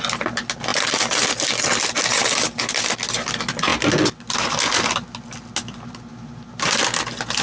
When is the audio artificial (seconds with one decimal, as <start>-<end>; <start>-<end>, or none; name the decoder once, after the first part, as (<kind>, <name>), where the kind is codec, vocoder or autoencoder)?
none